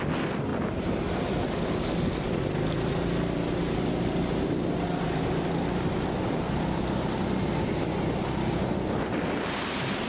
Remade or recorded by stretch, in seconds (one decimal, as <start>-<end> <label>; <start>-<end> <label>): 0.0-10.1 recorded